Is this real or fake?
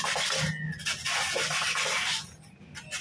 real